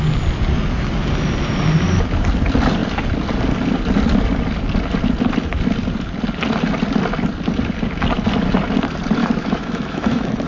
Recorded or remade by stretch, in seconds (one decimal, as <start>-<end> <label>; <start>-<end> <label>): 0.0-9.2 recorded; 9.2-10.5 remade